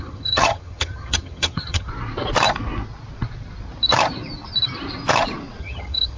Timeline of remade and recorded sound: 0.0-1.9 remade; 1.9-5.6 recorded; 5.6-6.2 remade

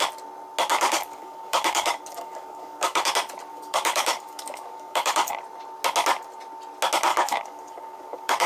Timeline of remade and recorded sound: 0.0-0.7 recorded; 0.7-3.1 remade; 3.1-3.5 recorded; 3.5-5.3 remade; 5.3-7.1 recorded; 7.1-8.5 remade

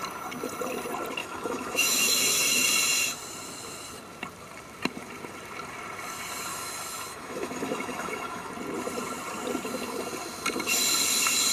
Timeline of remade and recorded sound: 0.0-1.2 recorded; 1.2-2.7 remade; 2.7-6.5 recorded; 6.5-8.5 remade; 8.5-11.5 recorded

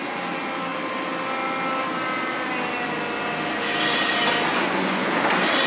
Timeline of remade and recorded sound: 0.0-4.5 recorded; 4.5-5.1 remade; 5.1-5.7 recorded

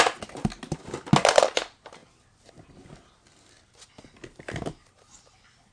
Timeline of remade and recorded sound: 0.0-5.7 recorded

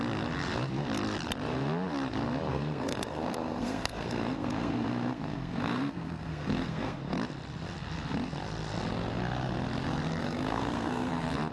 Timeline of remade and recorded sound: 0.0-2.5 recorded; 2.5-7.0 remade; 7.0-10.2 recorded; 10.2-11.1 remade; 11.1-11.5 recorded

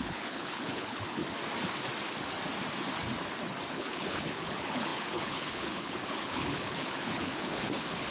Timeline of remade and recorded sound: 0.0-1.2 remade; 1.2-3.7 recorded; 3.7-8.1 remade